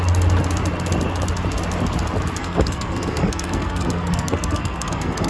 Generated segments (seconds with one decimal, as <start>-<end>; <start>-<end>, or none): 2.4-5.3